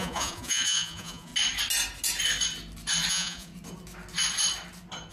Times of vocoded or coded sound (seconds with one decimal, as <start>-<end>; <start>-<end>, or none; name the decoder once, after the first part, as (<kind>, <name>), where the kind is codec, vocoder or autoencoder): 0.0-1.3 (vocoder, Vocos); 3.1-3.5